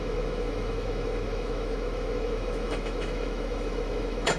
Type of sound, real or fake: fake